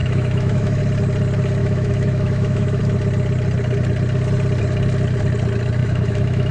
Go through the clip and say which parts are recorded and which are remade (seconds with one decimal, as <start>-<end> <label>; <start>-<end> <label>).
0.0-0.8 remade; 0.8-1.6 recorded; 1.6-2.8 remade; 2.8-5.8 recorded; 5.8-6.5 remade